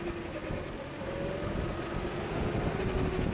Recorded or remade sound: recorded